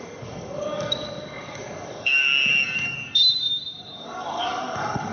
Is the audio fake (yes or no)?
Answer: yes